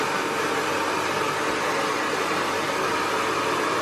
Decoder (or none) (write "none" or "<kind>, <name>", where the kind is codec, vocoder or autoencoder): none